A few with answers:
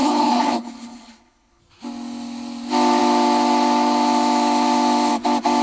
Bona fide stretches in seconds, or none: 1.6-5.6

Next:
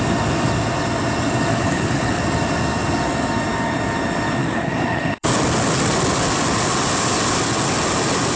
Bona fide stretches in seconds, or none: 0.0-1.5; 2.2-4.4; 5.3-8.4